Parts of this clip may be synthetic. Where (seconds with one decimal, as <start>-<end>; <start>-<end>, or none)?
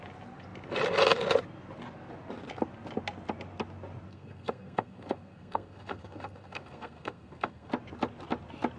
4.1-7.7